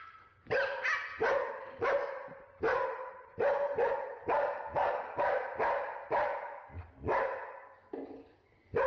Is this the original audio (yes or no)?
yes